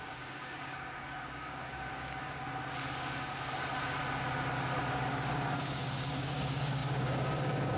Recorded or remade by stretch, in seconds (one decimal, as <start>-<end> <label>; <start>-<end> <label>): 0.0-2.5 remade; 2.5-4.9 recorded; 4.9-7.8 remade